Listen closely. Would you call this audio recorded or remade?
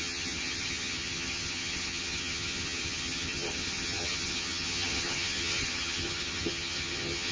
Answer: remade